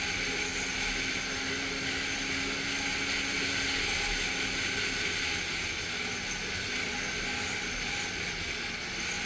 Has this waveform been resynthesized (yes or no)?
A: no